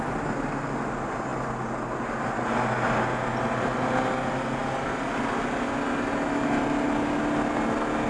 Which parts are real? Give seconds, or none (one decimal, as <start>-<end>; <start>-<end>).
0.0-8.1